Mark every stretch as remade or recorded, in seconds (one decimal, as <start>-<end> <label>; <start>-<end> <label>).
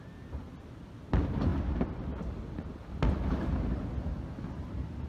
0.0-5.1 recorded